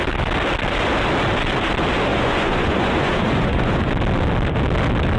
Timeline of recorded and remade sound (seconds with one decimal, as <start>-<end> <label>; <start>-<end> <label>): 0.0-2.1 recorded; 2.1-3.9 remade; 3.9-5.2 recorded